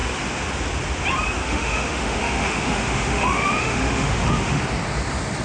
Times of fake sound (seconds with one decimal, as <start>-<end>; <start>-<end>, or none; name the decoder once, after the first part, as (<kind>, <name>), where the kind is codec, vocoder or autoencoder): 1.4-4.6 (autoencoder, DAC-VAE)